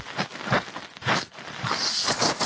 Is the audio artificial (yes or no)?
no